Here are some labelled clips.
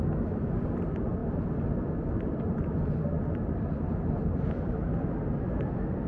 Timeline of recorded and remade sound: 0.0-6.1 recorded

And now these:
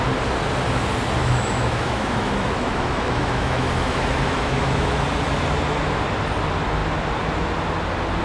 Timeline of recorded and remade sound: 0.0-1.2 recorded; 1.2-5.0 remade; 5.0-8.2 recorded

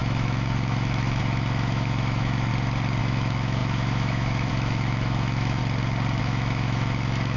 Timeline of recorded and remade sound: 0.0-2.5 remade; 2.5-3.0 recorded; 3.0-5.6 remade; 5.6-6.2 recorded; 6.2-7.4 remade

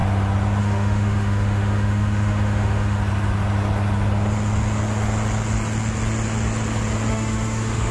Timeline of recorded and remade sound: 0.0-0.6 recorded; 0.6-3.0 remade; 3.0-7.1 recorded; 7.1-7.9 remade

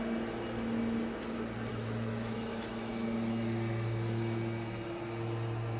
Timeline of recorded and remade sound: 0.0-1.7 recorded; 1.7-2.9 remade; 2.9-5.8 recorded

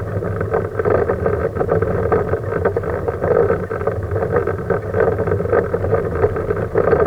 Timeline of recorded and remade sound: 0.0-7.1 recorded

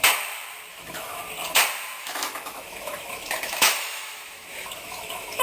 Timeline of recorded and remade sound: 0.0-0.7 recorded; 0.7-1.2 remade; 1.2-2.0 recorded; 2.0-5.4 remade